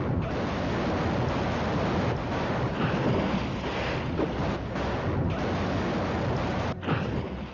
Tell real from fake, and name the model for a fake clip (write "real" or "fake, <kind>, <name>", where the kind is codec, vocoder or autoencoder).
real